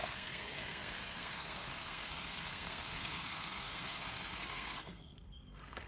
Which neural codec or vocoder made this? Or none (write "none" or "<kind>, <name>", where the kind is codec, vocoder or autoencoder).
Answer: codec, SNAC